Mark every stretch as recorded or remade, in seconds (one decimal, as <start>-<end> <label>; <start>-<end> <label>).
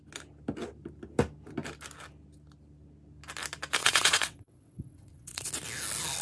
0.0-3.8 recorded; 3.8-5.5 remade; 5.5-6.2 recorded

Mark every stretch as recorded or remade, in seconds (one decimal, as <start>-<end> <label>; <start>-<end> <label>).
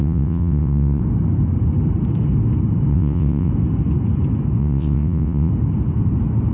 0.0-1.0 remade; 1.0-2.9 recorded; 2.9-3.5 remade; 3.5-4.6 recorded; 4.6-5.5 remade; 5.5-6.5 recorded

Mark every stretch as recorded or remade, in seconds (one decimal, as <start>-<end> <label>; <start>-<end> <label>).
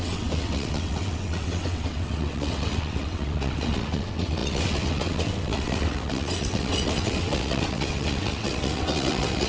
0.0-9.5 remade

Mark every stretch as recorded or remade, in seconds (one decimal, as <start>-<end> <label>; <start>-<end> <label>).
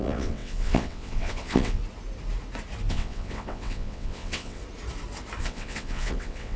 0.0-1.8 remade; 1.8-2.9 recorded; 2.9-4.6 remade; 4.6-5.4 recorded; 5.4-6.6 remade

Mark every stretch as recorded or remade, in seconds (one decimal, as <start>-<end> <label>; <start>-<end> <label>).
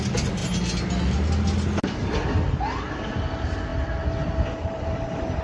0.0-5.4 recorded